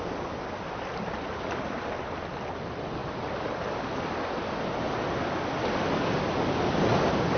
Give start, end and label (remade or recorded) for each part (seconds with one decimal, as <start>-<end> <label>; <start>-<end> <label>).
0.0-7.4 recorded